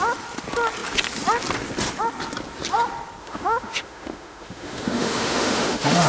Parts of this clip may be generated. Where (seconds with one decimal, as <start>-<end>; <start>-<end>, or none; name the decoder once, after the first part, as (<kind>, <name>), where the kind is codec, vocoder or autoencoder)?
3.2-6.1 (autoencoder, DAC-VAE)